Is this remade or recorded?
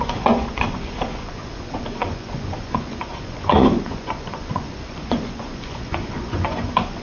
remade